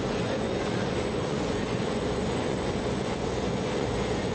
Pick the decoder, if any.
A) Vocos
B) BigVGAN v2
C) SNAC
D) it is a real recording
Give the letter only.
A